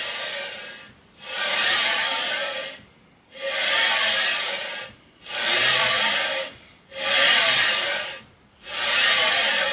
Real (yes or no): no